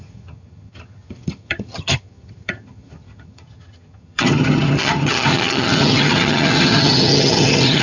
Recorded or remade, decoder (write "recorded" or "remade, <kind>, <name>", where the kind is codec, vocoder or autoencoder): remade, vocoder, HiFi-GAN